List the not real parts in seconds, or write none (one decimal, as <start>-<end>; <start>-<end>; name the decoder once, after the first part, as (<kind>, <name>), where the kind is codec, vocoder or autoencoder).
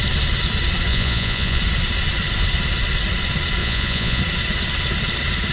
0.9-1.6 (vocoder, Vocos); 3.6-4.2